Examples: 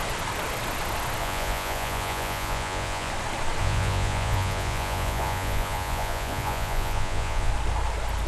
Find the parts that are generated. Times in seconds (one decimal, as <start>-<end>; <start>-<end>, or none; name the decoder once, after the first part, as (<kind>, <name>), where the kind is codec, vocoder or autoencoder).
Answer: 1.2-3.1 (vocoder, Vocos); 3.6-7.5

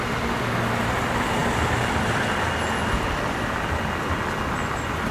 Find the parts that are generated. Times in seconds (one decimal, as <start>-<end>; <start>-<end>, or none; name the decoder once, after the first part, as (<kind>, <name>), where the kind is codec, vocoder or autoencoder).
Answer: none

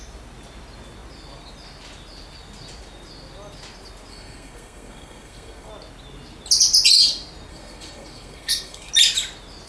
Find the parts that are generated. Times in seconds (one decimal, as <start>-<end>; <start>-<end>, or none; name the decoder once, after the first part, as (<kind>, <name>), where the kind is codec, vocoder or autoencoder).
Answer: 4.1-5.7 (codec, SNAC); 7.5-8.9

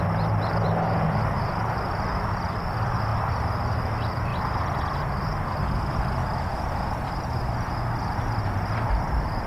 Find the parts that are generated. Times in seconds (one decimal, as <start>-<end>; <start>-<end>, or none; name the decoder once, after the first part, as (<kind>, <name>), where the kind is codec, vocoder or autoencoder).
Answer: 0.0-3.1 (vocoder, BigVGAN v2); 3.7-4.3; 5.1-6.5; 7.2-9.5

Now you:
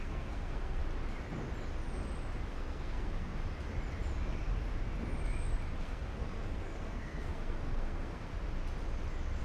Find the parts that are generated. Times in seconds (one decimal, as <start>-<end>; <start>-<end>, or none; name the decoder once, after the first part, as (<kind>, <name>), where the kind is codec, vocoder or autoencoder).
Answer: 0.0-0.8 (codec, SNAC); 2.5-3.4; 5.8-8.3

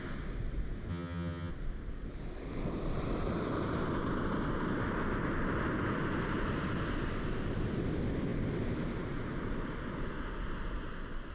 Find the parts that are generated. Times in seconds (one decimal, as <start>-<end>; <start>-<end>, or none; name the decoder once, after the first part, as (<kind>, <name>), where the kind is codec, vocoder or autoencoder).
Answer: 0.9-1.5 (vocoder, HiFi-GAN)

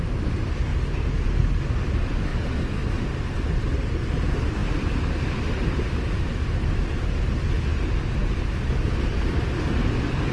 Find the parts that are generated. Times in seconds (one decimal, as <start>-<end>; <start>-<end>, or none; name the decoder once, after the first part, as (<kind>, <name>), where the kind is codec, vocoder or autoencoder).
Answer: 0.7-1.3 (vocoder, Vocos)